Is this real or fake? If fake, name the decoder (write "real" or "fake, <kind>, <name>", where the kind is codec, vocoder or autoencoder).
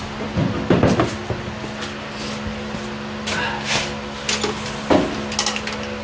real